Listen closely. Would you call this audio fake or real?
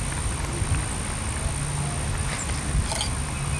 real